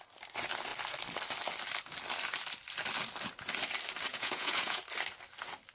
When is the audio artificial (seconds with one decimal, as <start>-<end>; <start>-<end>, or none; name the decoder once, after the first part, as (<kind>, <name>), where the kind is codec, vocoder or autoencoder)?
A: 4.1-4.8 (vocoder, Vocos)